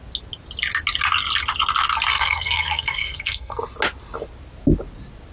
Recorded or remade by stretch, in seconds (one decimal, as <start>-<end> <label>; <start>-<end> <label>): 0.0-2.1 recorded; 2.1-3.6 remade; 3.6-5.3 recorded